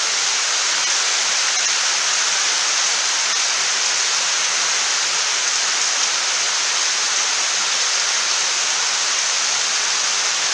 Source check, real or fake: real